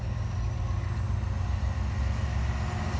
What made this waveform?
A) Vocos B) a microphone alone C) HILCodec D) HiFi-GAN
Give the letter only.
B